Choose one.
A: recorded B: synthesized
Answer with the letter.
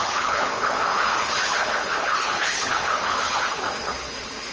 B